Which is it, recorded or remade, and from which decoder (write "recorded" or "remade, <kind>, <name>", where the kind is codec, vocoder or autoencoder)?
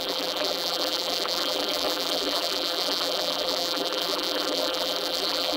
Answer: remade, vocoder, BigVGAN v2